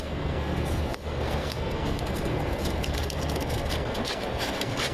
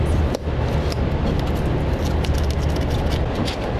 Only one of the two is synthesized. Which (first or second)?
first